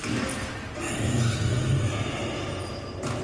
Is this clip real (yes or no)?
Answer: yes